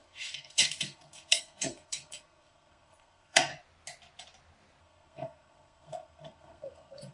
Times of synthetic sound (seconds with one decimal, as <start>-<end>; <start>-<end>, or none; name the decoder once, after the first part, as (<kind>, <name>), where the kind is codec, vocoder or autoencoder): 0.0-3.5 (codec, SNAC); 4.8-7.1